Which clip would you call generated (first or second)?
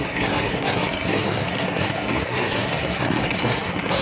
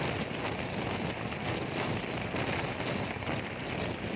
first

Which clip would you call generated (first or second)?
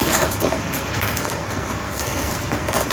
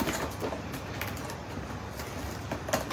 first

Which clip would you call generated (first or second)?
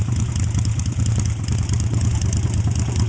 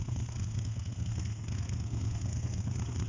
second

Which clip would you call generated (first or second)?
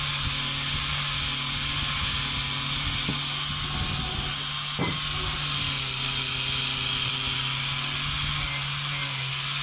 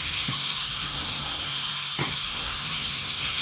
second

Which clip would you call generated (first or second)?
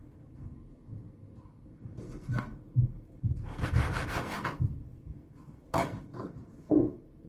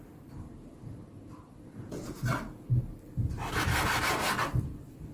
first